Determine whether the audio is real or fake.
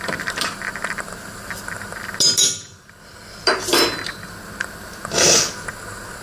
real